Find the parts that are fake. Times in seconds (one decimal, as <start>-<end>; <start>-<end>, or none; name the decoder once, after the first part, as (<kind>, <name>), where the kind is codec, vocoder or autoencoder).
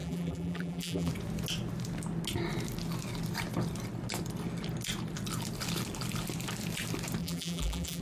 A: 0.0-1.1 (vocoder, BigVGAN v2); 7.2-8.0